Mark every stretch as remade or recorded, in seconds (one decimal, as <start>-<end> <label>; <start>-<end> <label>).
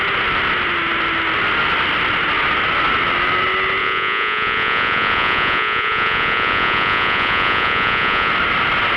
0.0-3.8 recorded; 3.8-8.3 remade; 8.3-9.0 recorded